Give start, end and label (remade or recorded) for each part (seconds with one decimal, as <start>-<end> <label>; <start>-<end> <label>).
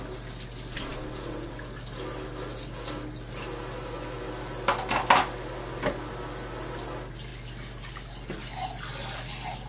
0.0-9.7 recorded